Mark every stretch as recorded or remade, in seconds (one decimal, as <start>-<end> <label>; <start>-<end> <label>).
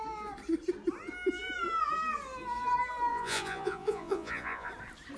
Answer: 0.0-3.1 recorded; 3.1-4.7 remade; 4.7-5.2 recorded